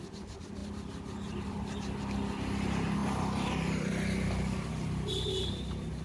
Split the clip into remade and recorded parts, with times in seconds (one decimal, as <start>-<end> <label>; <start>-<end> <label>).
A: 0.0-0.6 recorded; 0.6-2.0 remade; 2.0-3.0 recorded; 3.0-3.9 remade; 3.9-6.0 recorded